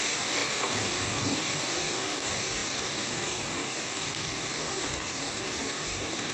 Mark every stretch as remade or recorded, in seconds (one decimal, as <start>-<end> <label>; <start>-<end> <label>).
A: 0.0-6.3 remade